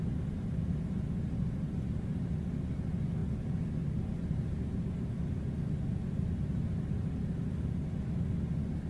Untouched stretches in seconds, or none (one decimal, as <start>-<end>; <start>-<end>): 0.0-8.9